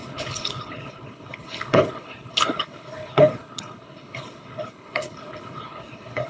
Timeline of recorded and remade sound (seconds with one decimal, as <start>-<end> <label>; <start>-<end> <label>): 0.0-6.3 remade